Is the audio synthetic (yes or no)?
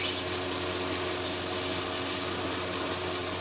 no